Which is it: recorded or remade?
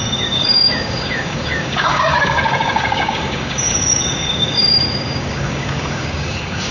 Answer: remade